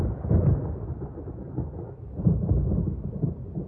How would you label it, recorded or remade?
recorded